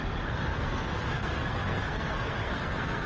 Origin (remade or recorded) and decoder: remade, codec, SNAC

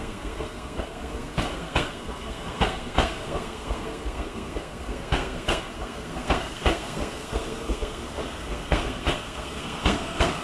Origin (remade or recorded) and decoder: remade, codec, SNAC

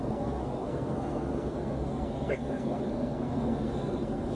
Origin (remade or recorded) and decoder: remade, codec, SNAC